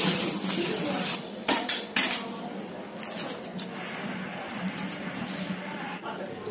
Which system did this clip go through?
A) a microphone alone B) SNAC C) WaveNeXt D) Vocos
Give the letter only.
A